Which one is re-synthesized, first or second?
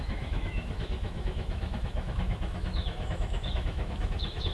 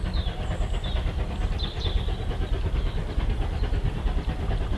first